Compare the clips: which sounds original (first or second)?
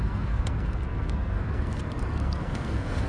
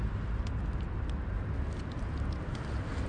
second